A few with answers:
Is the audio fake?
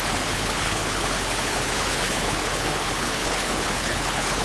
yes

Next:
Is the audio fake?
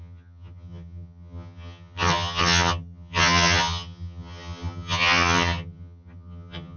yes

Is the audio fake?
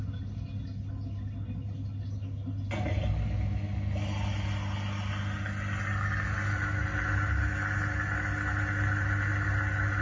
no